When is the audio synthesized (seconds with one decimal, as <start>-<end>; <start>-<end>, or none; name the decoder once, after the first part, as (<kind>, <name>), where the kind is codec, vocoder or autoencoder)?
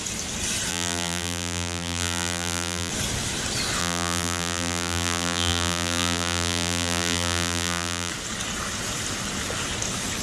0.7-2.9 (vocoder, BigVGAN v2); 3.8-8.1